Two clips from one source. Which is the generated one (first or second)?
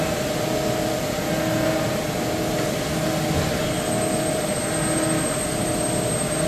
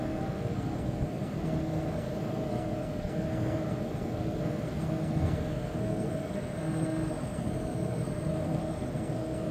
second